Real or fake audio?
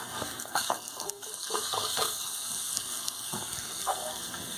fake